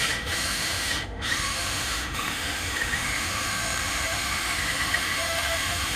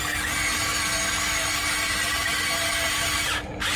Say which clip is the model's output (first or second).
first